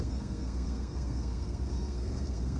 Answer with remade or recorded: remade